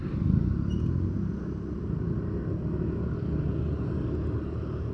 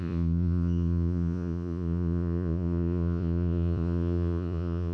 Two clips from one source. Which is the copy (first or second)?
second